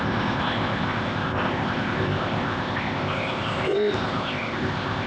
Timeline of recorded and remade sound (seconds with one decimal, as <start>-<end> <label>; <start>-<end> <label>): 0.0-5.1 remade